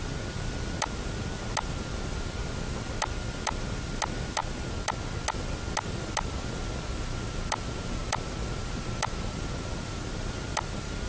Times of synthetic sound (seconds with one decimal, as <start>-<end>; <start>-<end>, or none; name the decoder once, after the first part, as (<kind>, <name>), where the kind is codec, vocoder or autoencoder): none